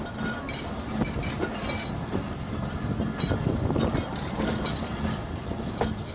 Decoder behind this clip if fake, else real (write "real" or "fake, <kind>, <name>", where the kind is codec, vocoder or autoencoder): real